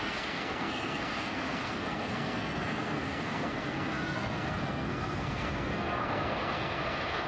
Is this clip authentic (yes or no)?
no